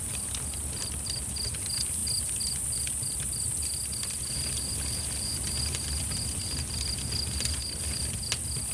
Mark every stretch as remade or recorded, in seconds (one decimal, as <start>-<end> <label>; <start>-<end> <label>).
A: 0.0-8.7 recorded